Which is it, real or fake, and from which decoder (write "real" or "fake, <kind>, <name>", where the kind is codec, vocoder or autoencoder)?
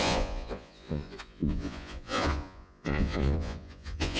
fake, vocoder, Vocos